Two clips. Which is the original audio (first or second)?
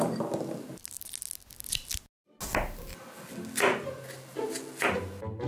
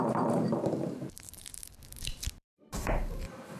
first